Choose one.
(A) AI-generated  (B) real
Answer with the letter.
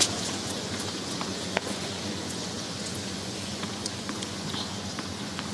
A